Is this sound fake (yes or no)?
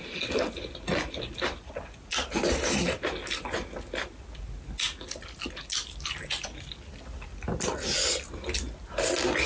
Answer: no